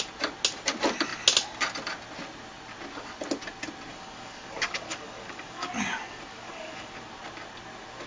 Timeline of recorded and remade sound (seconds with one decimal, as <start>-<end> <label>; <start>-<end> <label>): 0.0-3.9 recorded; 3.9-5.7 remade; 5.7-6.3 recorded; 6.3-6.9 remade; 6.9-8.1 recorded